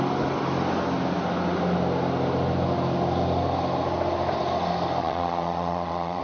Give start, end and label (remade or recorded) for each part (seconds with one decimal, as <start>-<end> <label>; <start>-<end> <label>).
0.0-5.0 recorded; 5.0-6.2 remade